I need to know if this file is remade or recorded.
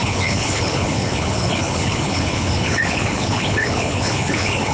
remade